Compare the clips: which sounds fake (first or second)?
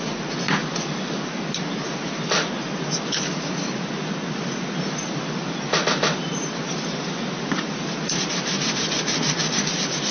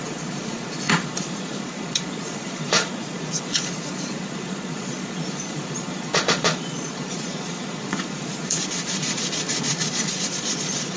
second